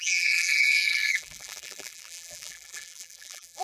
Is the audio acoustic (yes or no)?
no